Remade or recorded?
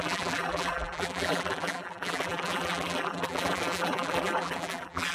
remade